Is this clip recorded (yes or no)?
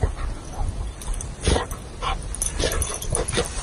yes